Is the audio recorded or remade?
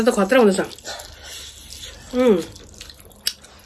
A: recorded